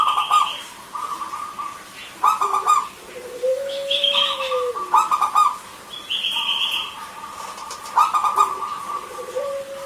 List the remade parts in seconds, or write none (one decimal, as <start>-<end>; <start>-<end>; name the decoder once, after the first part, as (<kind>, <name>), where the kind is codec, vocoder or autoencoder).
3.5-4.7 (autoencoder, DAC-VAE)